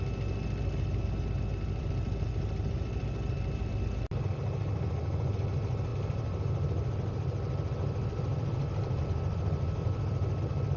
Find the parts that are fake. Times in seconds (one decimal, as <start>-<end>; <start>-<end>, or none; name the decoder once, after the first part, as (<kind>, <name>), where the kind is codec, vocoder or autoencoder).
1.5-3.7 (vocoder, BigVGAN v2); 5.9-9.0; 9.8-10.4